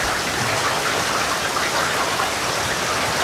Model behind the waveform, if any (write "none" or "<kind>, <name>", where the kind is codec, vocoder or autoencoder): none